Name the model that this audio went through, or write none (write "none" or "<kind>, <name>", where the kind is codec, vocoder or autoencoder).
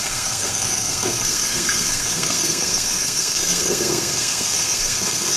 codec, SNAC